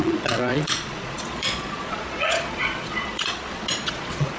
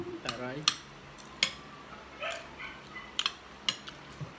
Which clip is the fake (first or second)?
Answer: first